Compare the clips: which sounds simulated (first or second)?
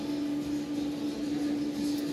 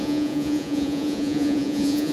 second